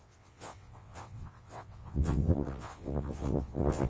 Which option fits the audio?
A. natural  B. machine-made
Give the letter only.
B